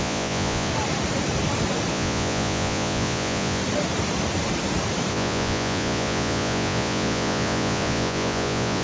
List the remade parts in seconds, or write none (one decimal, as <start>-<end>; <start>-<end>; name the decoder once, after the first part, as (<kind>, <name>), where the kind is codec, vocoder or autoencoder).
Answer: 0.0-0.7 (vocoder, Vocos); 1.9-3.6; 5.1-8.8